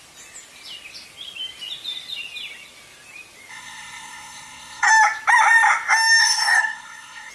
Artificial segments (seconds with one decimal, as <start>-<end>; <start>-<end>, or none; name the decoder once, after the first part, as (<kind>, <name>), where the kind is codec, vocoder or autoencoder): 3.5-4.9 (codec, SNAC); 6.2-7.3